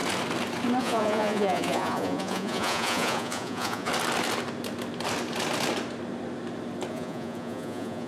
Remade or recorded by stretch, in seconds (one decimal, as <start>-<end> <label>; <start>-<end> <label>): 0.0-0.8 recorded; 0.8-3.9 remade; 3.9-6.9 recorded; 6.9-8.1 remade